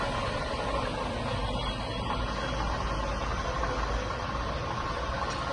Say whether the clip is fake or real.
real